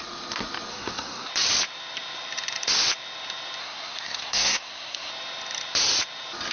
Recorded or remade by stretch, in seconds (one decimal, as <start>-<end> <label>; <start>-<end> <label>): 0.0-0.7 recorded; 0.7-1.3 remade; 1.3-3.6 recorded; 3.6-5.1 remade; 5.1-6.5 recorded